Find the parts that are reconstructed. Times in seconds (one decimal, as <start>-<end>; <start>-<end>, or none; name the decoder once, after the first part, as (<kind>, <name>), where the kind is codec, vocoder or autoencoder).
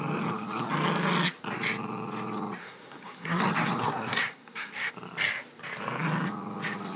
2.6-3.4 (codec, SNAC); 3.8-4.9